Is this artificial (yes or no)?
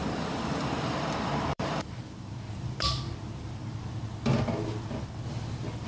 yes